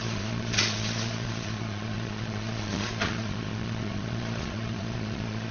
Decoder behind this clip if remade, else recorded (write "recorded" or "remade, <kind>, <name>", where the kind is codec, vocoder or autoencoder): remade, vocoder, Vocos